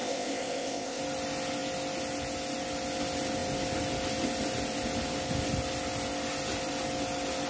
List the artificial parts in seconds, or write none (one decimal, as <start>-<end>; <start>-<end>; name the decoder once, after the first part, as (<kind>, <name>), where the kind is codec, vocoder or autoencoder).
0.0-1.0 (codec, ZipCodec)

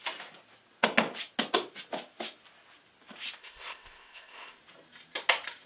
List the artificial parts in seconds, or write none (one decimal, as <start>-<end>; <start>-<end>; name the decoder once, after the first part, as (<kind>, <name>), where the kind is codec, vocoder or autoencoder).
3.4-4.6 (codec, ZipCodec)

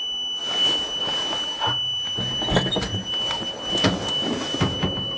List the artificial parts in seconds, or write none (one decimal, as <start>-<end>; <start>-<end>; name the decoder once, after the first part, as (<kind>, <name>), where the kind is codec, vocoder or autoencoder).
none